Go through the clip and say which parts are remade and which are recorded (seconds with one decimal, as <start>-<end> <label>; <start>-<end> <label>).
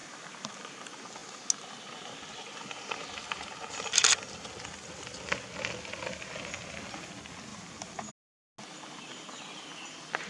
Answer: 0.0-0.7 remade; 0.7-7.5 recorded; 7.5-8.1 remade; 8.1-10.3 recorded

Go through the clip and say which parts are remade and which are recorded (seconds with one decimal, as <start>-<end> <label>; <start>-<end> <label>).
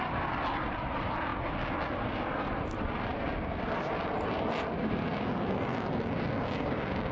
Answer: 0.0-7.1 recorded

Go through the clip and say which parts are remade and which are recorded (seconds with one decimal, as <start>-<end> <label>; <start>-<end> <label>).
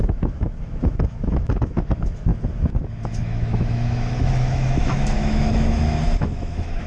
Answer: 0.0-2.3 remade; 2.3-2.9 recorded; 2.9-6.9 remade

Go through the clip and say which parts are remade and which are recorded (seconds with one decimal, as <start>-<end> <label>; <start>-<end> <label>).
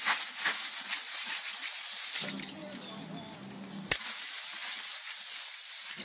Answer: 0.0-1.0 recorded; 1.0-1.7 remade; 1.7-4.6 recorded; 4.6-6.0 remade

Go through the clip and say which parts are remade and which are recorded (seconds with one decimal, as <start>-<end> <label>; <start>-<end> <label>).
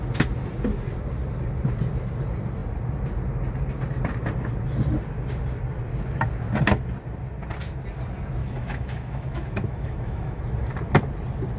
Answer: 0.0-8.4 recorded; 8.4-10.4 remade; 10.4-11.6 recorded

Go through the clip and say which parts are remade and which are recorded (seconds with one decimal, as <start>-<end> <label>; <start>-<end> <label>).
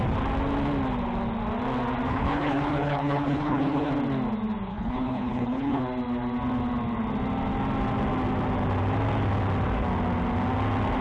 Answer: 0.0-2.1 recorded; 2.1-3.9 remade; 3.9-4.7 recorded; 4.7-5.8 remade; 5.8-11.0 recorded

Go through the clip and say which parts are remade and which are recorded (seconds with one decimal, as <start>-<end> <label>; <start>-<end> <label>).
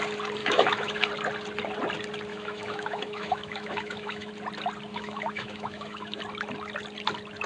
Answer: 0.0-0.4 recorded; 0.4-1.1 remade; 1.1-2.3 recorded; 2.3-4.3 remade; 4.3-4.9 recorded; 4.9-6.2 remade; 6.2-7.5 recorded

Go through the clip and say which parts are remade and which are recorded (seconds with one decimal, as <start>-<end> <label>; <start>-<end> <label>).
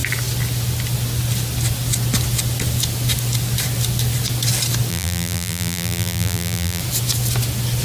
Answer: 0.0-4.9 recorded; 4.9-6.8 remade; 6.8-7.8 recorded